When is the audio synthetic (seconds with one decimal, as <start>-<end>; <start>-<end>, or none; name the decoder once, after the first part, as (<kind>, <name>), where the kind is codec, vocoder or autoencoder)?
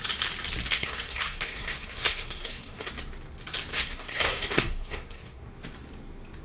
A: 0.6-2.9 (codec, SNAC); 3.7-5.4